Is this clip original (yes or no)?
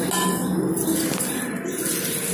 yes